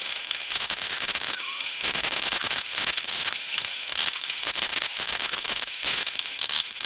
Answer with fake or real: fake